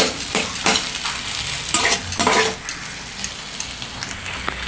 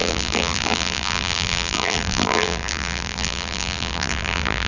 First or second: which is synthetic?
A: second